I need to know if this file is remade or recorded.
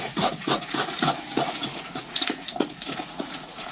remade